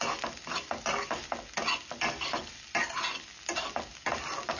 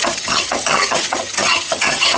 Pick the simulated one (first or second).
second